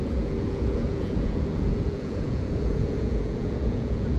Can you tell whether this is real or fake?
fake